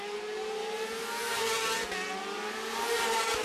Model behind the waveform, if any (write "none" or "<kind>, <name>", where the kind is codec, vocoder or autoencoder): none